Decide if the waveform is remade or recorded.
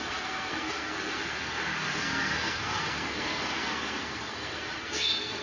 remade